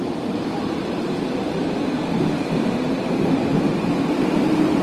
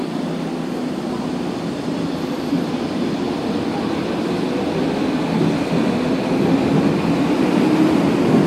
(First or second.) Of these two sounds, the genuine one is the second